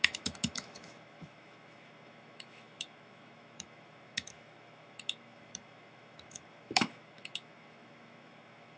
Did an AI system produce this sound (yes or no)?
yes